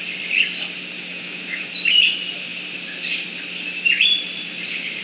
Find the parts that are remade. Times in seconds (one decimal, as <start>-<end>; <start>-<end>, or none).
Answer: 1.1-1.7